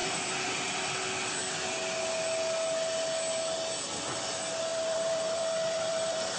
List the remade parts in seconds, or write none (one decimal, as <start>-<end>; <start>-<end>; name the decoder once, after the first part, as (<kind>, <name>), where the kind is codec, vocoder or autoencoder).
0.0-0.7 (vocoder, BigVGAN v2); 4.7-6.4